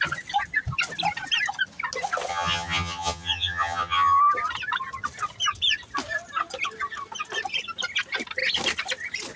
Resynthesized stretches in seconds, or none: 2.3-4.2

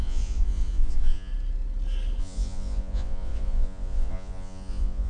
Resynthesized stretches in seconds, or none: 0.0-1.3; 2.2-5.1

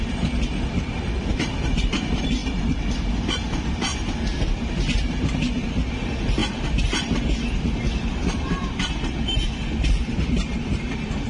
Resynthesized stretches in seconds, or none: 0.0-3.9; 5.9-6.4; 7.0-11.3

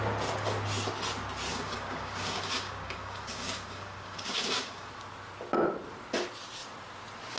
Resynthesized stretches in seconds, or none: 1.5-4.9